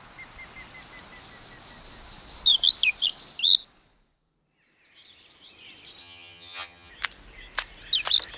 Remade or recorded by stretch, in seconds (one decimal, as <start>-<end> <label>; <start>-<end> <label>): 0.0-6.0 recorded; 6.0-6.9 remade; 6.9-8.4 recorded